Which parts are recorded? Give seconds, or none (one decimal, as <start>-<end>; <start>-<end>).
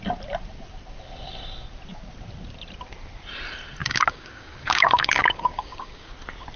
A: 0.0-3.8; 6.1-6.6